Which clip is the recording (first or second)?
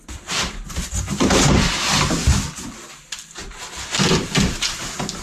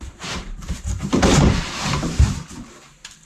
first